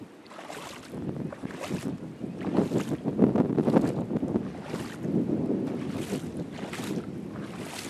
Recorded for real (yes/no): yes